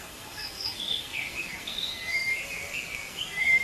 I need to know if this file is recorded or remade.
remade